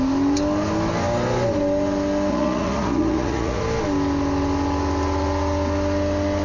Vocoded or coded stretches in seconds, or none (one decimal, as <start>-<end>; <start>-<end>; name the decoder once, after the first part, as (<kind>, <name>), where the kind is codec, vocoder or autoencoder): 2.3-3.6 (vocoder, Vocos)